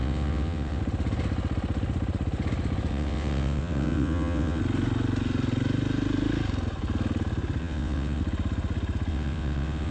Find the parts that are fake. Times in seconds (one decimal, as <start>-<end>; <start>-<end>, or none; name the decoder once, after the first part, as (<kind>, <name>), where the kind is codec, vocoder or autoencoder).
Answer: 0.0-0.8 (vocoder, WaveNeXt); 2.9-4.6; 7.6-8.2; 9.1-9.9